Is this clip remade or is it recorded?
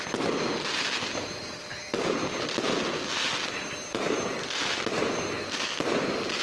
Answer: recorded